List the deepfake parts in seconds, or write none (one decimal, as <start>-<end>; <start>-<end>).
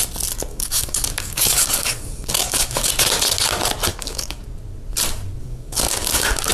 0.5-2.9; 3.9-4.4; 5.4-6.5